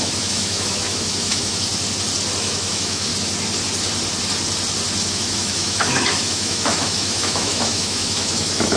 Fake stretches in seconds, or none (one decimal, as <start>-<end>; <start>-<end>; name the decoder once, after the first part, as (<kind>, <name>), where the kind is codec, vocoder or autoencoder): 0.0-1.7 (autoencoder, DAC-VAE); 2.4-3.1; 5.1-8.8